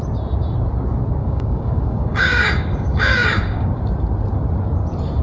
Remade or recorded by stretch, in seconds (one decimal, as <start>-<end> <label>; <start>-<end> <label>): 0.0-1.2 recorded; 1.2-3.7 remade; 3.7-5.2 recorded